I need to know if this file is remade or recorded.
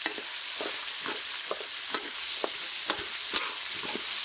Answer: recorded